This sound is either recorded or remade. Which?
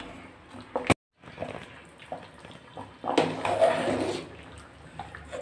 recorded